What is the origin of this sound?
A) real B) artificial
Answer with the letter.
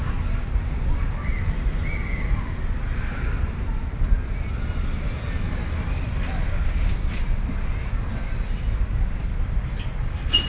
A